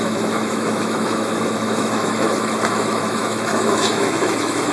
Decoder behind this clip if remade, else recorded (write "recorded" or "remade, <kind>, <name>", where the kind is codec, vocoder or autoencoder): remade, autoencoder, DAC-VAE